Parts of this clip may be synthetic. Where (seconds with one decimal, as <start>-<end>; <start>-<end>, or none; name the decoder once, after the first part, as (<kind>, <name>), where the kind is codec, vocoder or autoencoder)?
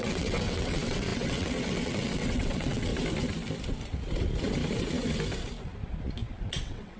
0.0-2.9 (vocoder, WaveNeXt); 6.5-7.0